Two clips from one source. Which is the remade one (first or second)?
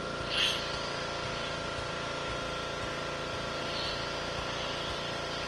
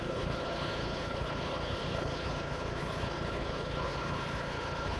second